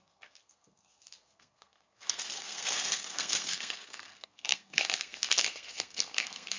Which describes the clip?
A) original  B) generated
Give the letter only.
B